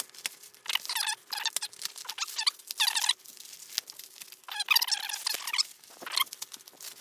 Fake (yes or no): no